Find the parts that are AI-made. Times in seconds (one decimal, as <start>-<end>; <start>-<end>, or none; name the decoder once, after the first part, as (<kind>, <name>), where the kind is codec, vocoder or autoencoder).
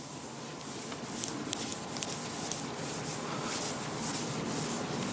none